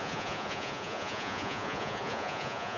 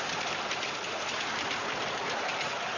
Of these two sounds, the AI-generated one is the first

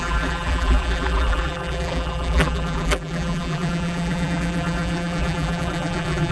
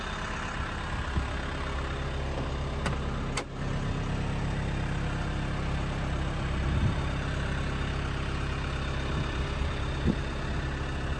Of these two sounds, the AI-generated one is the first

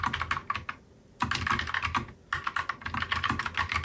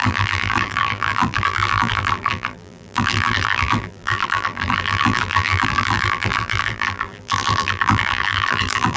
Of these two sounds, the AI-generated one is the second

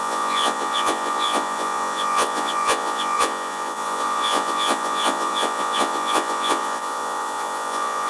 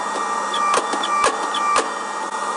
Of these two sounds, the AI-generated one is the first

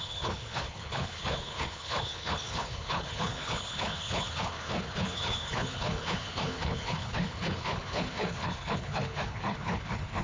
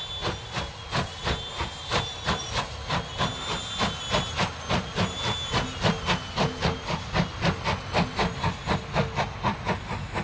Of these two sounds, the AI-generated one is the first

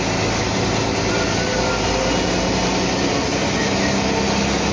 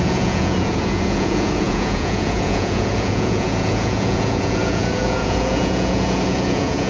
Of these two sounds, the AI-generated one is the second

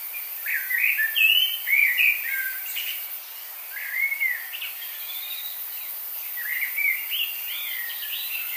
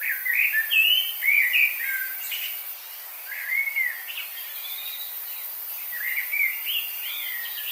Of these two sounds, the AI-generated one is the first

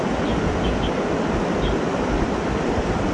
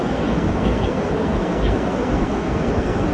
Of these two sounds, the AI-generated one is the second